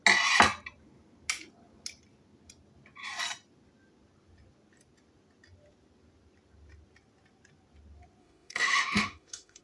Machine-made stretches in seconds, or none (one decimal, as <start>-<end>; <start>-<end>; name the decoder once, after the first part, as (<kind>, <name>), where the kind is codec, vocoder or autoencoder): 8.2-9.6 (autoencoder, DAC-VAE)